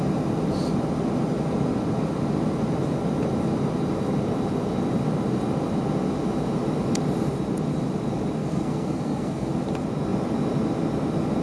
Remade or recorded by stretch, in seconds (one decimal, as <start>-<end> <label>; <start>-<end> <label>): 0.0-8.4 recorded; 8.4-9.5 remade; 9.5-11.4 recorded